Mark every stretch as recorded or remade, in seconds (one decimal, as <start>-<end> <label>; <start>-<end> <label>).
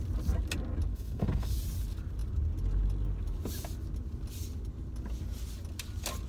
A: 0.0-0.9 recorded; 0.9-1.5 remade; 1.5-6.3 recorded